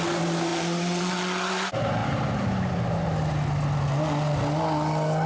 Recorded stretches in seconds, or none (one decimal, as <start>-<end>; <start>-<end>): 0.0-5.3